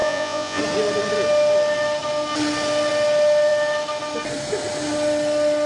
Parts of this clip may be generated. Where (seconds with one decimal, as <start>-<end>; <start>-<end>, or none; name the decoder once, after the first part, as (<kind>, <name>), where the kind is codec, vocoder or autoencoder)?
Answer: 0.0-0.6 (vocoder, Vocos)